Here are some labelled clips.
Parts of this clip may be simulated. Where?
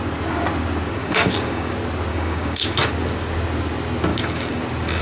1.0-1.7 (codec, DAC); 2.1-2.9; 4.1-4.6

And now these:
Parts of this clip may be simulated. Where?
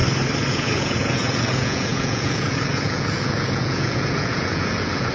0.5-5.1 (vocoder, Vocos)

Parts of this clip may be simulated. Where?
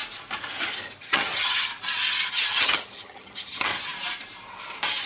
1.0-1.7 (vocoder, HiFi-GAN); 2.3-3.7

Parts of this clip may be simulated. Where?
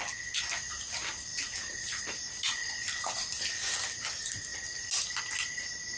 none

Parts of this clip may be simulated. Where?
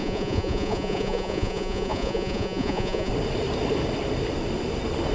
0.0-3.1 (vocoder, Vocos)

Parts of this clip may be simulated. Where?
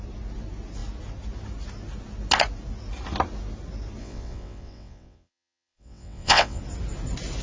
4.0-6.6 (vocoder, WaveNeXt)